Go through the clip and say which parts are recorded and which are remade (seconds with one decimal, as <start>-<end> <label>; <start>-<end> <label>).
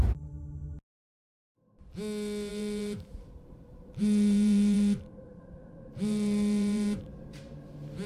0.0-2.5 recorded; 2.5-7.4 remade; 7.4-8.1 recorded